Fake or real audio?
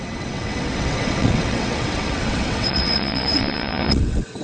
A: fake